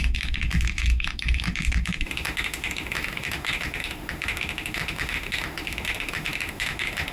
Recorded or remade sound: remade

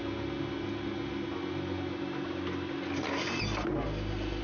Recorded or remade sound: recorded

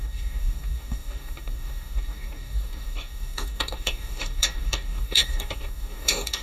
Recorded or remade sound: remade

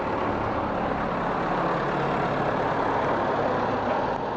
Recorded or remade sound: recorded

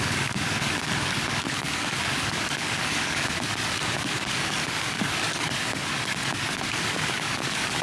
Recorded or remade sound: remade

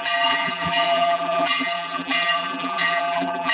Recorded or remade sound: remade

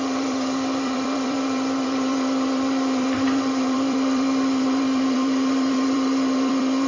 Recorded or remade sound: remade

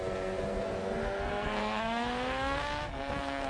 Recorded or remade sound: remade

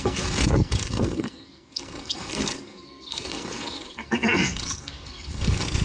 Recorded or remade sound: remade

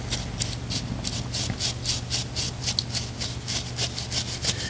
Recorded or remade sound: recorded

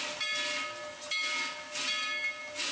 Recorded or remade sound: recorded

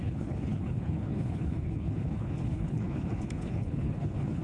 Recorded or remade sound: remade